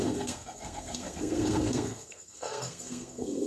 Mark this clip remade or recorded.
remade